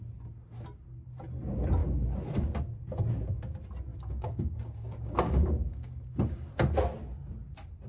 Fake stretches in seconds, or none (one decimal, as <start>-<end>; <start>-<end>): 3.9-6.5

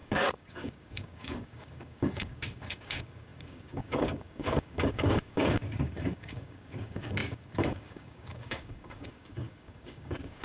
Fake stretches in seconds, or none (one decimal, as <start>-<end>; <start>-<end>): 0.0-10.4

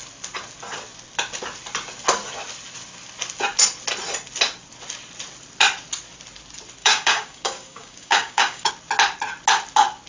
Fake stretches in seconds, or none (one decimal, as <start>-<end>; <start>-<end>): 6.8-8.7

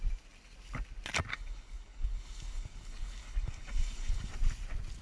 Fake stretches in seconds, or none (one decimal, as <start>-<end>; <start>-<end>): 1.3-4.3

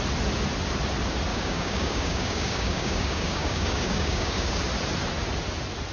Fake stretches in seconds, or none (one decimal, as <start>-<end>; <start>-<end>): 1.3-4.6

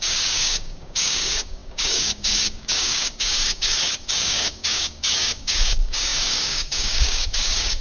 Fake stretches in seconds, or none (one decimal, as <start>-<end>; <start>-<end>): 0.0-7.8

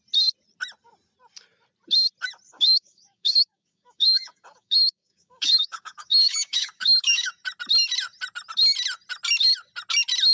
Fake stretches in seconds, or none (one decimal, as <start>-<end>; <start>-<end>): 2.5-7.3

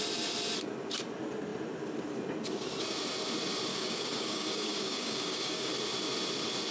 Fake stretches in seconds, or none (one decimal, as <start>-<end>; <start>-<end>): 3.7-5.7